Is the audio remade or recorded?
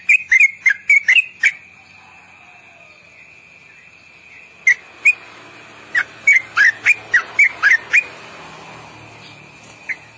recorded